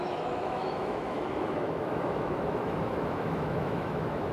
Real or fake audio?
fake